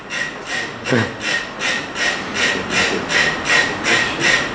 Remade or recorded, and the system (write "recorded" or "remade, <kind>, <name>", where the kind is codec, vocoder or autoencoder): recorded